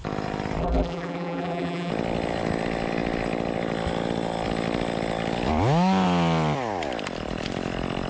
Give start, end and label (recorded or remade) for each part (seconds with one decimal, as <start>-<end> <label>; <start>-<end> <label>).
0.0-0.6 recorded; 0.6-1.9 remade; 1.9-8.1 recorded